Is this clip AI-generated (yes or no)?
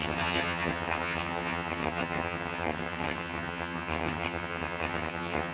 yes